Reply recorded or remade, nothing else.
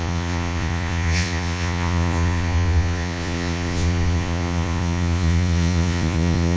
remade